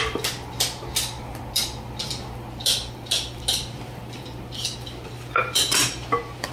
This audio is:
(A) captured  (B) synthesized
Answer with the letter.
A